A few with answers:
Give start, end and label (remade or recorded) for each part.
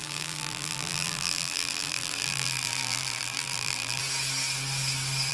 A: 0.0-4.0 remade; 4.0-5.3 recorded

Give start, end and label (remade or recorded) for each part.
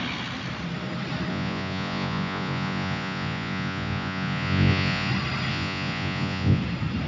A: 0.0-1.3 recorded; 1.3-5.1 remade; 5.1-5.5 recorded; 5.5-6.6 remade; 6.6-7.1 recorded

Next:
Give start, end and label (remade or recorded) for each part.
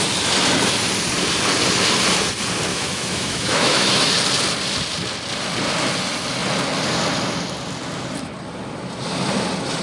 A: 0.0-2.7 recorded; 2.7-4.1 remade; 4.1-9.8 recorded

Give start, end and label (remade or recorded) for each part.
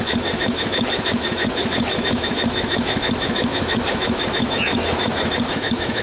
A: 0.0-6.0 remade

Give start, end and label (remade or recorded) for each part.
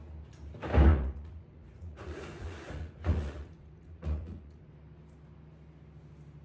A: 0.0-0.9 recorded; 0.9-4.7 remade; 4.7-6.4 recorded